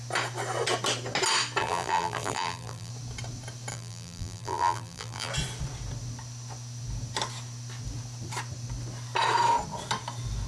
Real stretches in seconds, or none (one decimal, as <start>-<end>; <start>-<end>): 0.0-1.6; 2.9-3.7; 5.3-10.5